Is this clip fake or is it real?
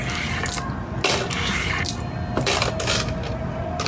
real